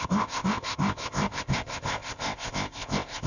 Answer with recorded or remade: remade